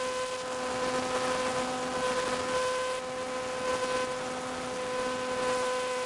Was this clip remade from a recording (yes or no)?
no